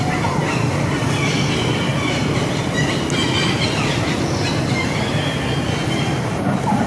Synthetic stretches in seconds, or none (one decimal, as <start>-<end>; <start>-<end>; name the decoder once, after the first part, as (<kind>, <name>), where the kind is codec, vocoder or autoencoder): none